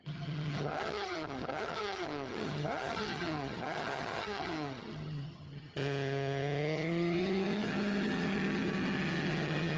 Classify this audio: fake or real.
fake